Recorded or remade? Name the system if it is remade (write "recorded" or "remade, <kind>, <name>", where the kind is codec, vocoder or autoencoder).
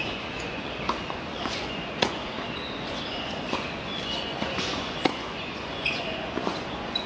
remade, vocoder, Vocos